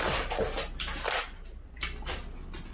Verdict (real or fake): real